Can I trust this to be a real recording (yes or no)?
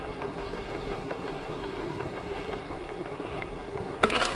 no